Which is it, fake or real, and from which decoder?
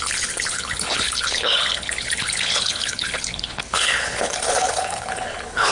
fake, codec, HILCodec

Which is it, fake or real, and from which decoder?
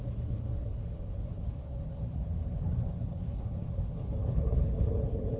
fake, codec, HILCodec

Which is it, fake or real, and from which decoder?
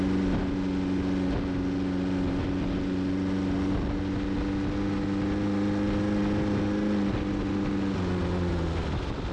real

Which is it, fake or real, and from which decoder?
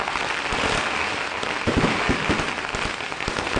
real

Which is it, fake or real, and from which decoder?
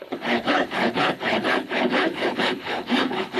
fake, codec, HILCodec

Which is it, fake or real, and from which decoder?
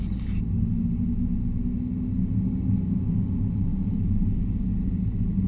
real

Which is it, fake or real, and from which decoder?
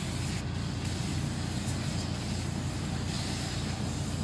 real